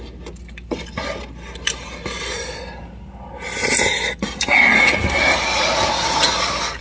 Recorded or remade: recorded